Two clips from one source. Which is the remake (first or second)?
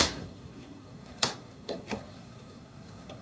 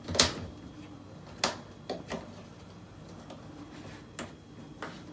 first